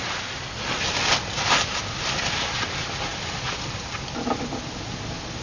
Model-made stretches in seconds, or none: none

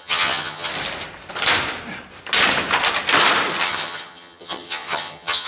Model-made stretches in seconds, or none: 0.0-0.7; 3.6-5.5

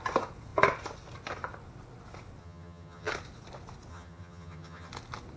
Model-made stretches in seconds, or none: 2.4-3.1; 3.9-4.9

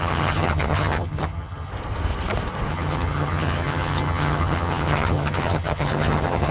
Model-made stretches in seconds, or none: 0.0-1.7; 2.7-6.5

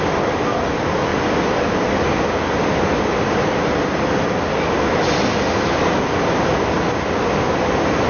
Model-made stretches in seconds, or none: none

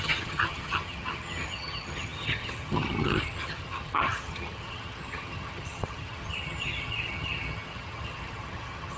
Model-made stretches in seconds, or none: 0.0-9.0

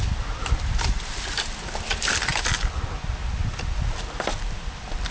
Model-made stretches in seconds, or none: none